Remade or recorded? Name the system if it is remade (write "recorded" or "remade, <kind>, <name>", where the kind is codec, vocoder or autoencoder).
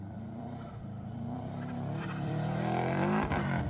remade, vocoder, BigVGAN v2